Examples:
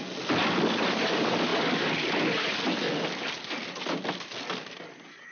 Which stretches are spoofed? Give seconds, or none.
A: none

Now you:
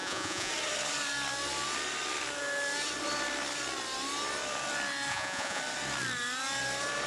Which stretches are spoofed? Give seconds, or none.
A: 0.0-0.5 (vocoder, Vocos); 5.1-5.6